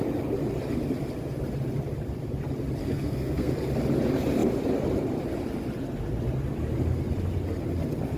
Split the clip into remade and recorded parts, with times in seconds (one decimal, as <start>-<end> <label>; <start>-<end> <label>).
0.0-2.8 recorded; 2.8-3.5 remade; 3.5-8.2 recorded

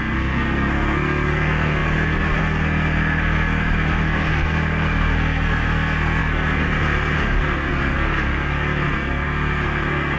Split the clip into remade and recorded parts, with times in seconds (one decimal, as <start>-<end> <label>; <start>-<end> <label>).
0.0-10.2 remade

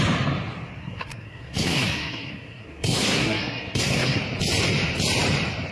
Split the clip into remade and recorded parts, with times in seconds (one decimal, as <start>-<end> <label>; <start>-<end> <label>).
0.0-0.8 recorded; 0.8-4.2 remade; 4.2-5.7 recorded

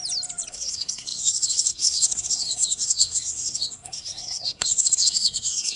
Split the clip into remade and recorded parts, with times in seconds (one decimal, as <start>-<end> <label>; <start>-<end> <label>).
0.0-0.5 recorded; 0.5-5.8 remade

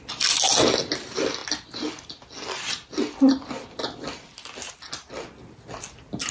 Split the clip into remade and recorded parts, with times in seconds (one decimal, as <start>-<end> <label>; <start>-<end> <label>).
0.0-6.3 recorded

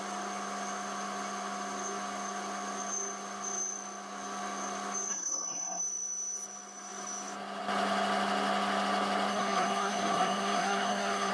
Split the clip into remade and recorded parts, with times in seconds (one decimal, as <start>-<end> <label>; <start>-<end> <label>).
0.0-5.1 recorded; 5.1-5.8 remade; 5.8-9.3 recorded; 9.3-11.3 remade

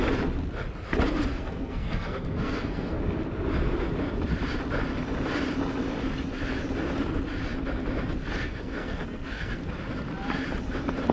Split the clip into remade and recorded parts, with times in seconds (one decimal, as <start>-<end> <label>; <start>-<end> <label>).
0.0-1.3 recorded; 1.3-3.0 remade; 3.0-8.4 recorded; 8.4-9.7 remade; 9.7-11.1 recorded